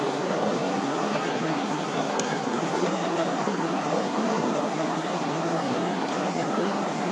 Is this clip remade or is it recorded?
remade